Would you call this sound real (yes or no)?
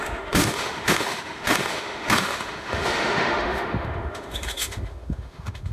no